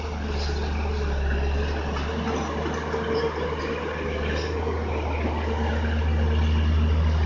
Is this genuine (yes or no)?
yes